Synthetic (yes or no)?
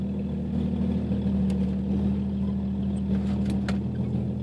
no